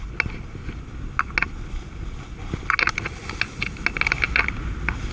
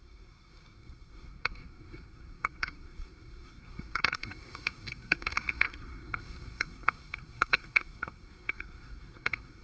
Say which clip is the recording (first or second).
first